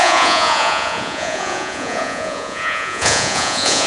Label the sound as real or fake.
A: fake